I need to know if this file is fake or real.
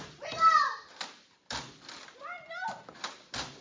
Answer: fake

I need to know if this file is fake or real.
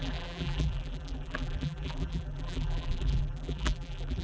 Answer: fake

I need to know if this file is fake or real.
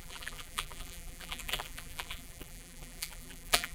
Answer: fake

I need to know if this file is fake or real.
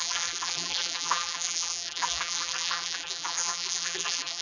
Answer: fake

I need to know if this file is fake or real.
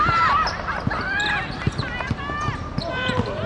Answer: real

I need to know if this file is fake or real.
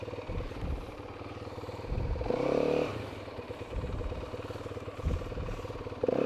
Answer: fake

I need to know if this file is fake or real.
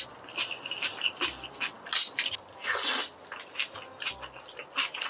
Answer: real